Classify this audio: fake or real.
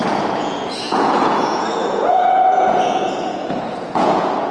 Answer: fake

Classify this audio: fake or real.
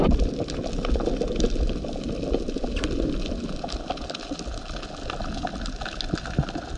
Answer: real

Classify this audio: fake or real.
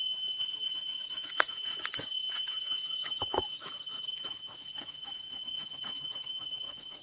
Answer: fake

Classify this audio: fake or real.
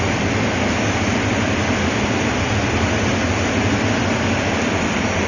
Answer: real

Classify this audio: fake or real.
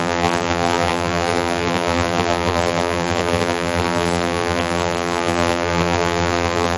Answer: fake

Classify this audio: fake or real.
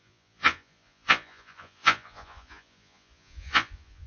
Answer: fake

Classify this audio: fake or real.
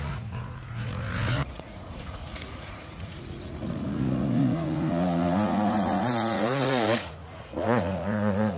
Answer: fake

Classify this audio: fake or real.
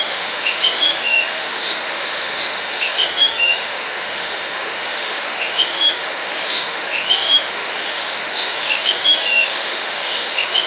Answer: fake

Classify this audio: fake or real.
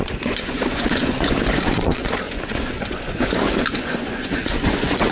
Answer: fake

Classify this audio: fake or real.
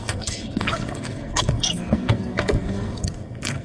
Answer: fake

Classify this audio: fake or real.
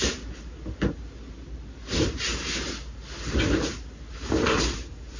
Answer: real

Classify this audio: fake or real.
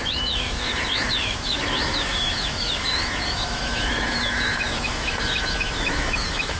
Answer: fake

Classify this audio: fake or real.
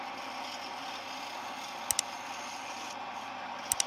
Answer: real